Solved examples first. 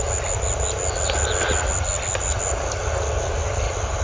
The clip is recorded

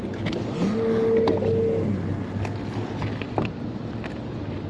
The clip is recorded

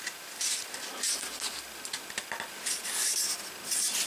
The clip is recorded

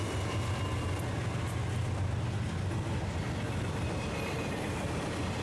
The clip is recorded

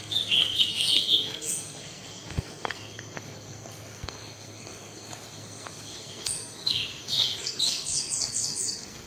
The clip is remade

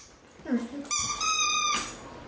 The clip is recorded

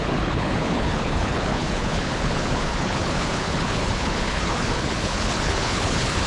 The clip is remade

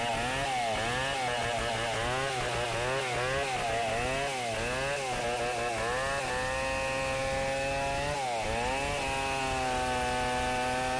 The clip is recorded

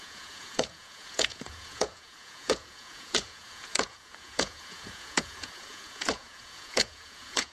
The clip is remade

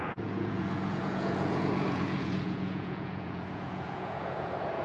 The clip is remade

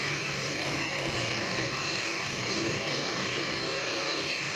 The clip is remade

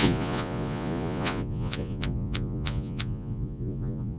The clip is remade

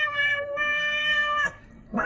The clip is remade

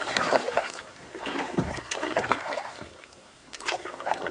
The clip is remade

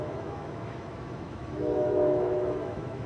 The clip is remade